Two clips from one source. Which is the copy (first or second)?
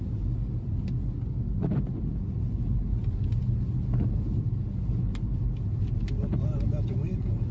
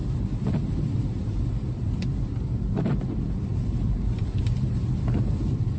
second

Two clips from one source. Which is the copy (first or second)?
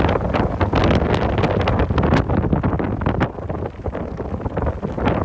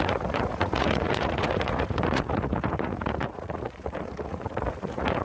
second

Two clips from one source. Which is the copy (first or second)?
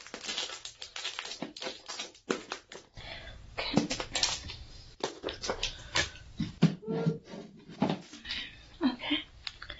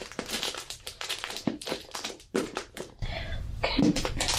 second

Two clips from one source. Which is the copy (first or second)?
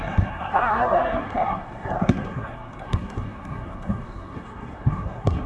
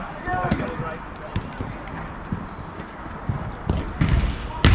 first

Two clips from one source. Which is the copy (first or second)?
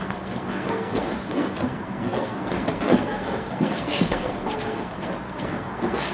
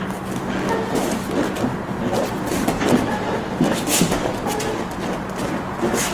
first